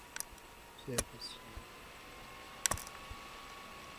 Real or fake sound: real